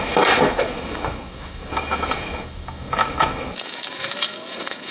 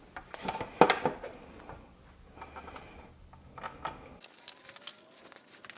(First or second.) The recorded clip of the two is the second